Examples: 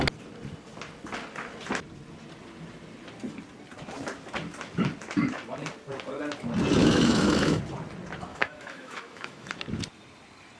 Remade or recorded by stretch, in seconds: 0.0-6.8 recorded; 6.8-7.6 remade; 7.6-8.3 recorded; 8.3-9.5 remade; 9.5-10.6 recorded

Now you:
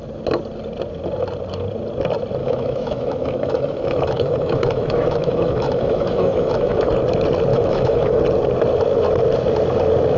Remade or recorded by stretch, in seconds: 0.0-2.4 recorded; 2.4-6.9 remade; 6.9-7.5 recorded; 7.5-8.2 remade; 8.2-10.2 recorded

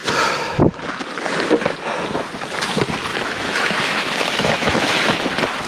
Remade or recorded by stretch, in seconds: 0.0-3.1 recorded; 3.1-5.1 remade; 5.1-5.7 recorded